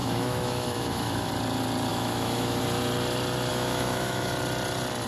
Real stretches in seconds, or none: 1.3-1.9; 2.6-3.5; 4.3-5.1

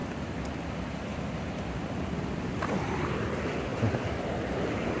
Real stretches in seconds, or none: 0.0-5.0

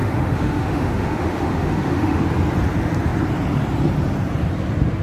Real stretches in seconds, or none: 2.2-5.0

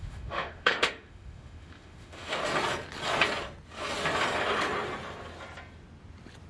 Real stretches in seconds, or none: 2.4-6.5

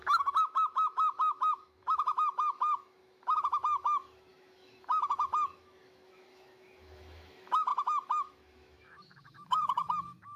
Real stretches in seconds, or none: none